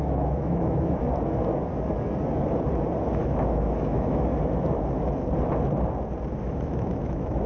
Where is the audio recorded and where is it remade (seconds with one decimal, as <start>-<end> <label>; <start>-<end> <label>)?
0.0-1.0 remade; 1.0-3.1 recorded; 3.1-4.3 remade; 4.3-6.4 recorded; 6.4-7.5 remade